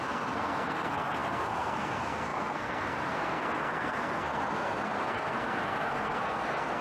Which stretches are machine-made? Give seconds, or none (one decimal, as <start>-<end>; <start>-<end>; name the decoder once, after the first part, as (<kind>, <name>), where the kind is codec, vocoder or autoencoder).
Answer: 0.0-6.8 (codec, SNAC)